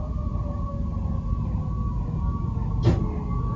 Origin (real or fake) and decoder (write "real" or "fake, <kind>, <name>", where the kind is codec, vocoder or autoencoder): real